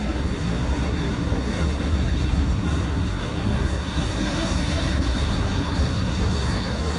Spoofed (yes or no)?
yes